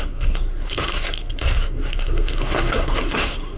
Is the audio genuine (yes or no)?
no